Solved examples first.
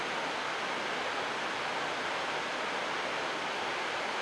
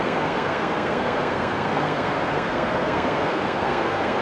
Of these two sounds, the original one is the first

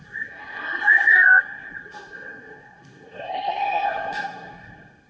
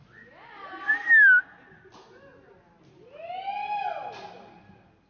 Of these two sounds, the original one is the second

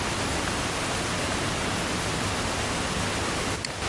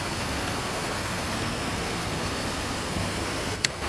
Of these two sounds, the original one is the first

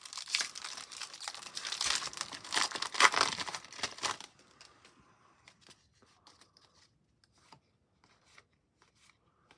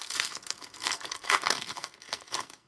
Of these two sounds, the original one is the first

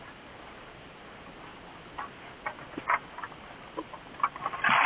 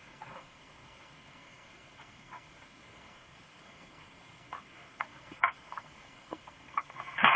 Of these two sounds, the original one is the first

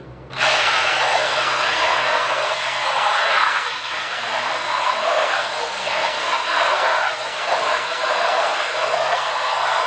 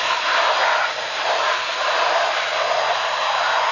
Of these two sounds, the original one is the second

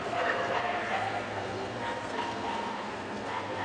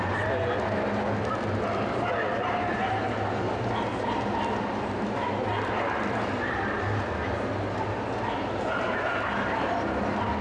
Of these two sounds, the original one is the second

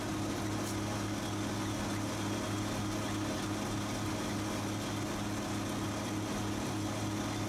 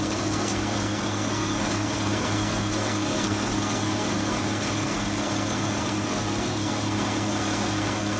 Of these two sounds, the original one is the first